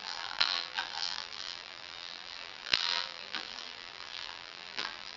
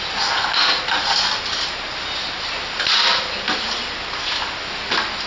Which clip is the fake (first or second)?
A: first